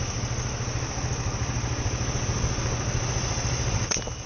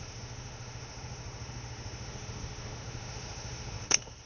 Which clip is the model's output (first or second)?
second